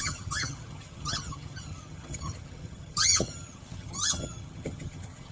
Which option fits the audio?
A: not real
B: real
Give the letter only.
A